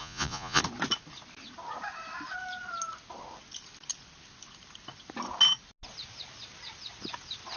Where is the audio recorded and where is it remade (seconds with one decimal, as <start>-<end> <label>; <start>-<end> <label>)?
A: 0.0-0.6 remade; 0.6-7.6 recorded